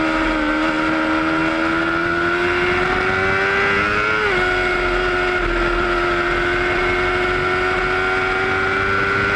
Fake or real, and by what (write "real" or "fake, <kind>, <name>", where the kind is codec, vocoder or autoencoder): real